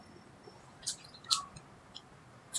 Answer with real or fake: real